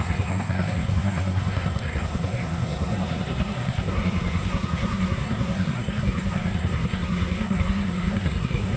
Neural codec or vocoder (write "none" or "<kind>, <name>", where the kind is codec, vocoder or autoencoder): codec, SNAC